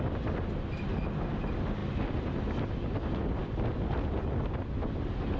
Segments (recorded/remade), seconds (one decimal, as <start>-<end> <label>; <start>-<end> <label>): 0.0-5.4 recorded